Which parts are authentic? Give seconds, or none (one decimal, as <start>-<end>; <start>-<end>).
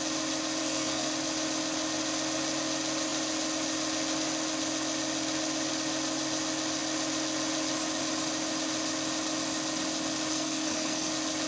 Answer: 0.0-0.6; 1.1-10.3; 11.1-11.5